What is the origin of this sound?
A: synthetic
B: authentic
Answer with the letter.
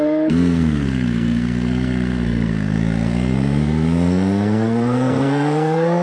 A